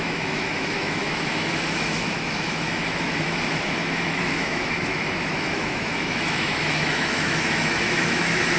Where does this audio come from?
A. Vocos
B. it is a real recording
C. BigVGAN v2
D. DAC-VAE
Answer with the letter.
D